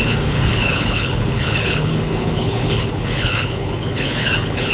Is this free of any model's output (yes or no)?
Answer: no